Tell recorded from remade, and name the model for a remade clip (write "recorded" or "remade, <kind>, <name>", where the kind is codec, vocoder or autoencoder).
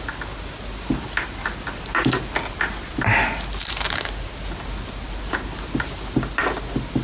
recorded